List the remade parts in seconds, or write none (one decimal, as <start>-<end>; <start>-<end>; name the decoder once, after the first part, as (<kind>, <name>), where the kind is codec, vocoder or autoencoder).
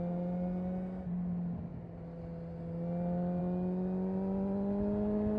none